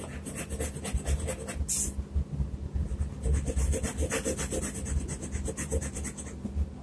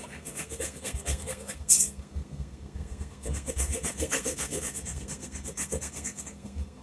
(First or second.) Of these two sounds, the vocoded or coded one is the second